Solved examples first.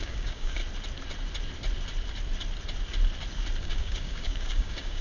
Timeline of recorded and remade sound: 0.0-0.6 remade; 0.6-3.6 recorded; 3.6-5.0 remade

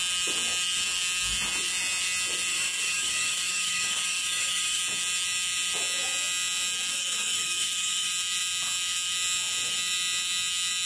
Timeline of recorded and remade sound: 0.0-2.5 recorded; 2.5-4.8 remade; 4.8-6.9 recorded; 6.9-8.1 remade; 8.1-10.9 recorded

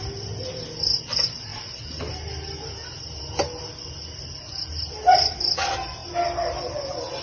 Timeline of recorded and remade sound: 0.0-7.2 recorded